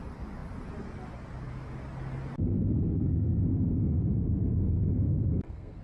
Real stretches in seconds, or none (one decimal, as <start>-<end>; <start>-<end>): 0.0-2.5